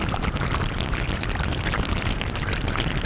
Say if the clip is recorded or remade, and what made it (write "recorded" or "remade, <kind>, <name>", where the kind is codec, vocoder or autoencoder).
recorded